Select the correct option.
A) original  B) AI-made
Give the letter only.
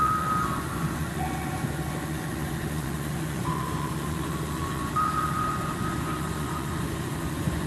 B